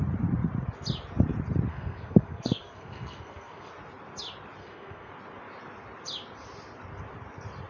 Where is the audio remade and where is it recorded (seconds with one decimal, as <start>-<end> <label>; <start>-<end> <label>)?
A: 0.0-1.7 recorded; 1.7-3.7 remade; 3.7-4.6 recorded; 4.6-5.1 remade; 5.1-7.7 recorded